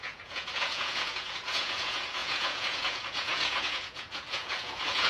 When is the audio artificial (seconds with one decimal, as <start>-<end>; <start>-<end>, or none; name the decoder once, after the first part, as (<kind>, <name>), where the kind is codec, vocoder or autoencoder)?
0.0-5.1 (vocoder, Vocos)